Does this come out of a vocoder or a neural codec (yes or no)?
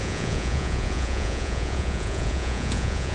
yes